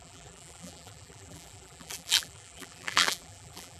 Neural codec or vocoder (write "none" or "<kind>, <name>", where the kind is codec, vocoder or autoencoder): vocoder, BigVGAN v2